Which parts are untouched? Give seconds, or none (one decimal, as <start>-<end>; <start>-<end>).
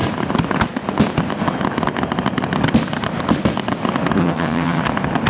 0.0-4.2; 4.8-5.3